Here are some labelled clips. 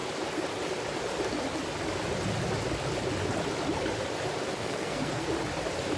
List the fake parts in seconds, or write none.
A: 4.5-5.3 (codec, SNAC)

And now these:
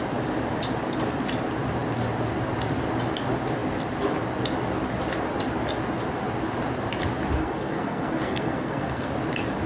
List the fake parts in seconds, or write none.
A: 7.4-9.1 (codec, SNAC)

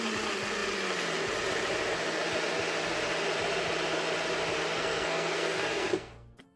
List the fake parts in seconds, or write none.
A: 4.7-6.6 (codec, SNAC)

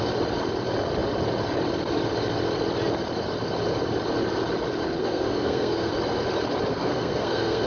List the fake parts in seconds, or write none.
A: 5.0-5.9 (codec, SNAC); 6.7-7.7

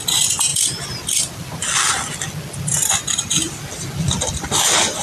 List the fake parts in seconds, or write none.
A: none